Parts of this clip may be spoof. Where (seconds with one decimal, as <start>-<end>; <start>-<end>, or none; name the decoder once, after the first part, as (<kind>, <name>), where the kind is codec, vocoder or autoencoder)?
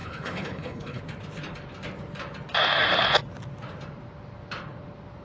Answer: 0.0-1.0 (codec, HILCodec)